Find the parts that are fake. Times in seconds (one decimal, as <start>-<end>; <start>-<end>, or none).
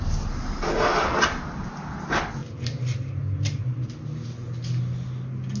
none